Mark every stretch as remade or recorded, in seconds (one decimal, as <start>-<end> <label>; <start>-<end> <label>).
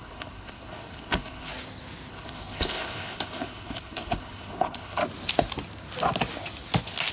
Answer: 0.0-1.5 remade; 1.5-2.1 recorded; 2.1-5.0 remade; 5.0-7.1 recorded